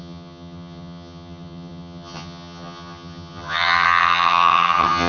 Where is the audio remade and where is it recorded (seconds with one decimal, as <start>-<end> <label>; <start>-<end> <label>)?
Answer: 0.0-5.1 remade